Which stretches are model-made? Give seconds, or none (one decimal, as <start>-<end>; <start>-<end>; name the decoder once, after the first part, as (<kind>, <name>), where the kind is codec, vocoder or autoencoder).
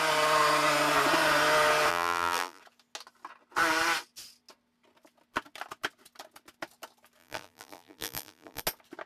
1.9-2.6 (vocoder, BigVGAN v2); 7.2-8.6